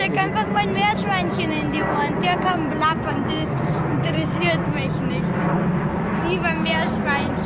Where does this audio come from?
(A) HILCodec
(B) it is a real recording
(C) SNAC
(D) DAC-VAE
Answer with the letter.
B